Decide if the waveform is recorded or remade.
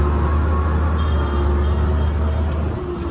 recorded